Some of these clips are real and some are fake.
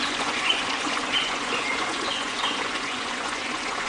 fake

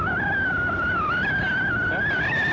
real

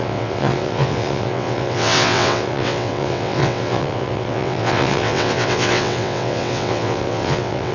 fake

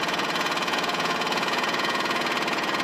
fake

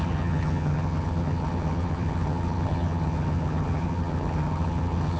fake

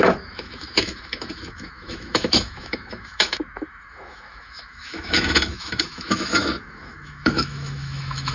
fake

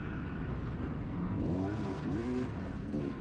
fake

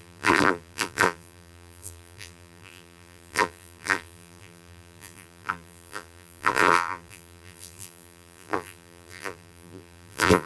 fake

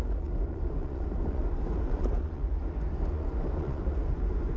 fake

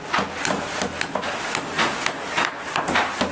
real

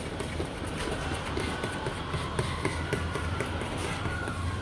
real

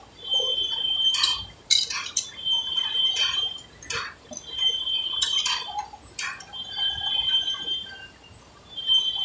real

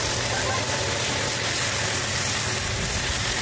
real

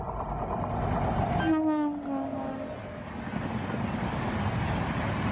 real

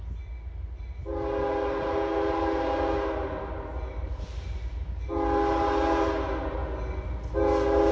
real